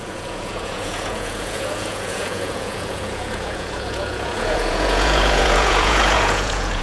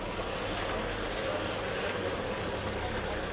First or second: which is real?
second